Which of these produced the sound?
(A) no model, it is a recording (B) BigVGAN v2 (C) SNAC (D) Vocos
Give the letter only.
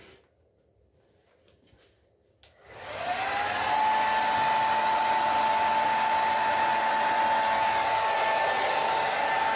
A